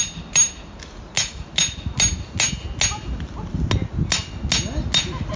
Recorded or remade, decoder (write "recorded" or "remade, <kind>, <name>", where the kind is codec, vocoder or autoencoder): recorded